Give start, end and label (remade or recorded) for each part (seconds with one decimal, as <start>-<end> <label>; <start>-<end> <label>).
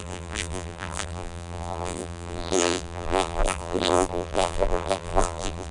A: 0.0-5.7 remade